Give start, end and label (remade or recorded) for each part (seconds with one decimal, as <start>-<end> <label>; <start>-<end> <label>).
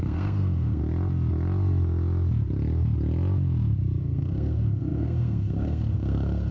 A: 0.0-0.8 remade; 0.8-4.0 recorded; 4.0-6.5 remade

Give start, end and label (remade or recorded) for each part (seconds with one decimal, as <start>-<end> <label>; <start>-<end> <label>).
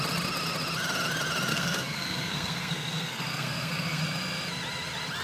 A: 0.0-1.5 recorded; 1.5-4.0 remade; 4.0-5.2 recorded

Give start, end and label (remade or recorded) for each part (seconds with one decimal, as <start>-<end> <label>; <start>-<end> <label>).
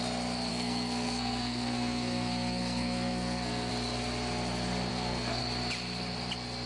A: 0.0-0.5 recorded; 0.5-3.7 remade; 3.7-4.9 recorded; 4.9-5.4 remade; 5.4-6.7 recorded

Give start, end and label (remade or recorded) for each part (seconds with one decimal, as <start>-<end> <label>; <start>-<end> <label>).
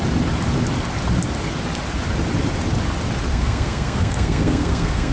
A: 0.0-3.3 recorded; 3.3-5.1 remade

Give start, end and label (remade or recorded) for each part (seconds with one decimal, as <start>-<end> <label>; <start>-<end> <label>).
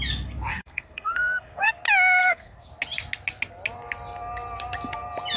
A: 0.0-0.5 recorded; 0.5-1.7 remade; 1.7-2.2 recorded; 2.2-2.7 remade; 2.7-5.4 recorded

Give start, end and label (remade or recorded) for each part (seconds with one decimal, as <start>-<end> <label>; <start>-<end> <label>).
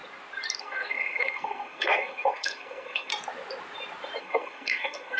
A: 0.0-0.6 recorded; 0.6-3.1 remade; 3.1-4.2 recorded; 4.2-5.2 remade